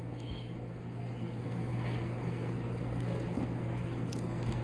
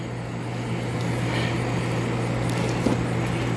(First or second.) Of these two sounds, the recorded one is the second